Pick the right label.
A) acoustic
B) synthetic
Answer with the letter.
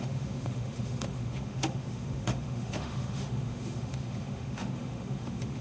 B